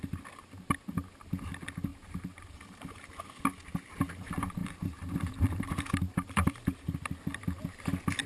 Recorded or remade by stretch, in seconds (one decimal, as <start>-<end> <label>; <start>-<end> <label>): 0.0-1.9 recorded; 1.9-3.1 remade; 3.1-4.6 recorded; 4.6-6.8 remade; 6.8-8.3 recorded